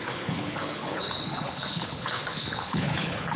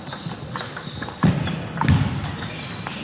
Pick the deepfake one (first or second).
first